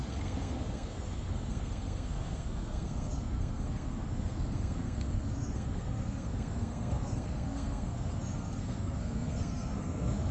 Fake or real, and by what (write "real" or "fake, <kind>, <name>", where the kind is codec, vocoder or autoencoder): fake, codec, SNAC